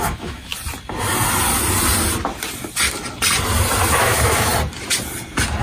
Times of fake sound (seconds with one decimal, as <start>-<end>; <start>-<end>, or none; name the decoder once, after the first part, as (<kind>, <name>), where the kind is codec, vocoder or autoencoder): 0.0-0.5 (autoencoder, DAC-VAE); 3.9-4.5